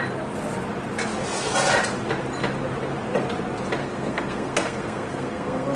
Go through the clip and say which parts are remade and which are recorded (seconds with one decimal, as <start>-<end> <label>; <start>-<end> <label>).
0.0-3.8 recorded; 3.8-5.8 remade